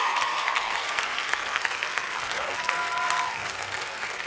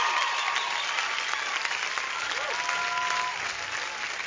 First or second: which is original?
second